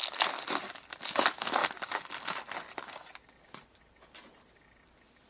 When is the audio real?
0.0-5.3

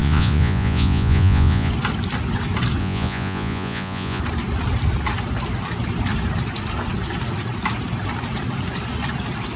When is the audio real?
1.7-2.8; 4.2-9.6

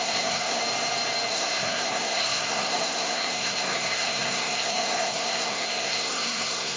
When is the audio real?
0.6-1.3

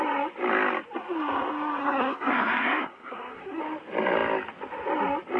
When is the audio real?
0.0-1.8; 3.6-5.4